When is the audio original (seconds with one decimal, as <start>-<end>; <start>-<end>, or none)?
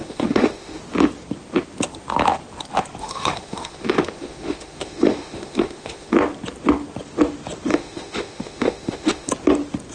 0.8-3.0; 6.1-7.7; 9.3-9.9